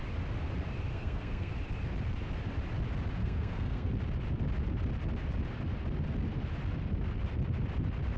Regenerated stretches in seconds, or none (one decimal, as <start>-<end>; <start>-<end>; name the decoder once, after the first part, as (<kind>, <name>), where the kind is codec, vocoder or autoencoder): 0.9-1.5 (codec, SNAC); 3.2-3.9